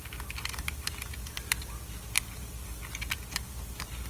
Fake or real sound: real